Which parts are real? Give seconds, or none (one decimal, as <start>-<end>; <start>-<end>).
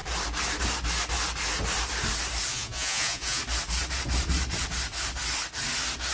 0.0-2.5; 3.4-6.1